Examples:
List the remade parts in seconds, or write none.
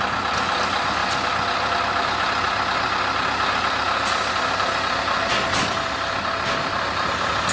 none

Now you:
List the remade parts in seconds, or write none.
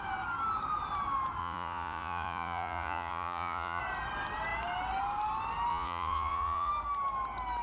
1.4-3.8; 5.7-6.7